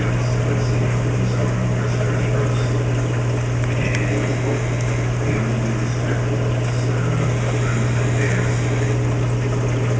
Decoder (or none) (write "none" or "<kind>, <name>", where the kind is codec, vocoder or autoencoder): none